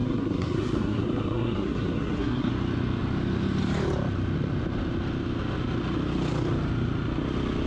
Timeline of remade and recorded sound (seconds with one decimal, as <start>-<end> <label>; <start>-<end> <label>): 0.0-2.5 remade; 2.5-7.7 recorded